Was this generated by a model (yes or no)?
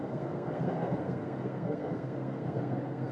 yes